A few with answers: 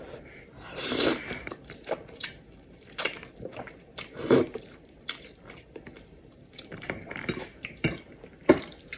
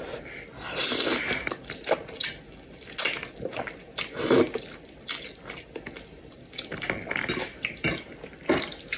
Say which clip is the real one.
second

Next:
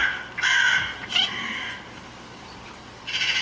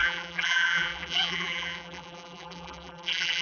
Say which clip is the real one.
first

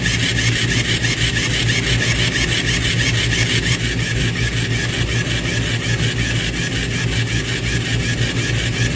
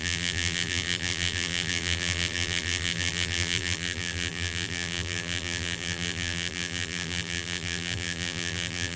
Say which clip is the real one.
first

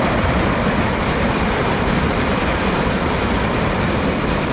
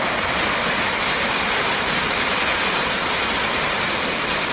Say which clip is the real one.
second